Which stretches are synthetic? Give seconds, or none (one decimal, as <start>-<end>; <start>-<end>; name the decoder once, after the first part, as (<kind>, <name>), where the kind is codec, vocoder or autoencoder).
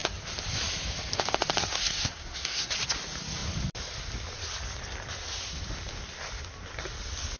1.6-2.7 (codec, SNAC)